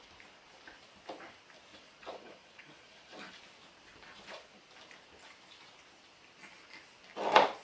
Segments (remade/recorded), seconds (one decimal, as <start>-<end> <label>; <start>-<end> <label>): 0.0-1.7 recorded; 1.7-3.3 remade; 3.3-4.1 recorded; 4.1-4.6 remade; 4.6-7.6 recorded